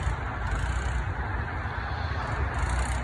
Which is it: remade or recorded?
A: recorded